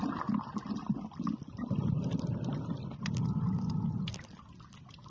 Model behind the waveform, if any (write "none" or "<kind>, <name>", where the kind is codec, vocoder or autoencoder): none